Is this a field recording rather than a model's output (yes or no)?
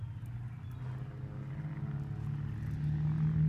yes